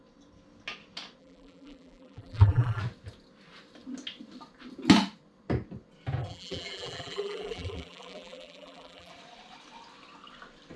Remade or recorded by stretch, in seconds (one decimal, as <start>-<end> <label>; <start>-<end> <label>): 0.0-1.2 recorded; 1.2-2.8 remade; 2.8-6.2 recorded; 6.2-9.1 remade; 9.1-10.8 recorded